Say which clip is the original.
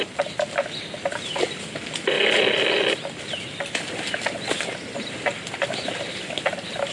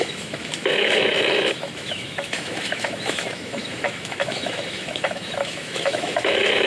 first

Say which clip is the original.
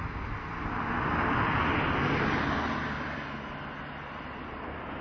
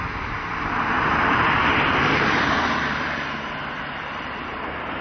first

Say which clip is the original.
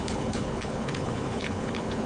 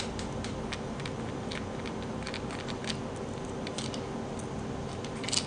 second